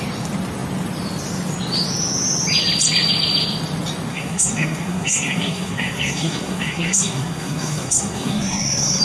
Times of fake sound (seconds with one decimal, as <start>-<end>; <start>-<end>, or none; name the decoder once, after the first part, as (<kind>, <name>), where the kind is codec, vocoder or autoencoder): 4.1-9.0 (codec, SNAC)